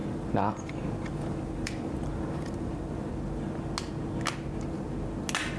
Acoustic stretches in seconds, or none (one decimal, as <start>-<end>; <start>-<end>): 3.1-5.6